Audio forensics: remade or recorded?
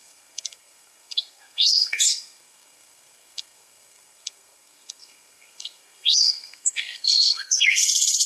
remade